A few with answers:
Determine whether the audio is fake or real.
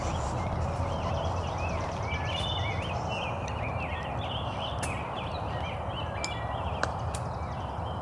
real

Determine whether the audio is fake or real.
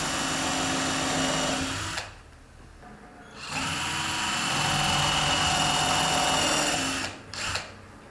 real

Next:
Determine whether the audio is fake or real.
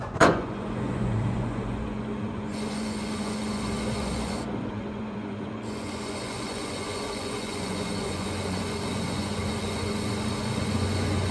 fake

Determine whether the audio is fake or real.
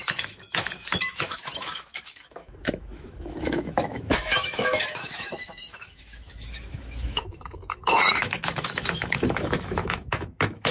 fake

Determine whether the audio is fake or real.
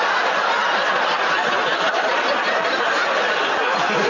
real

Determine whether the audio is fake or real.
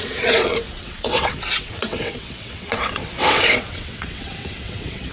fake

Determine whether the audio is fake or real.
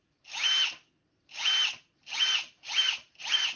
real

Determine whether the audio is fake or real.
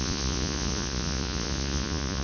fake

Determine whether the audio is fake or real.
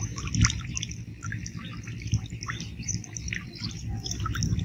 real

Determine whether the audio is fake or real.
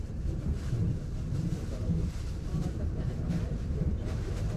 fake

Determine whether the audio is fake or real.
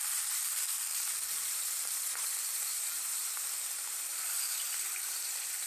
fake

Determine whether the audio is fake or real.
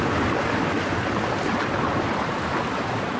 real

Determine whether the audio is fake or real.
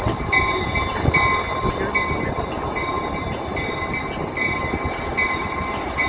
real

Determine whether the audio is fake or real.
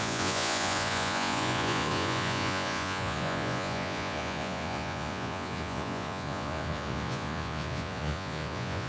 fake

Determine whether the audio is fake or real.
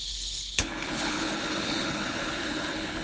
fake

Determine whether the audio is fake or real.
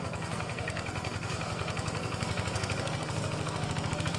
fake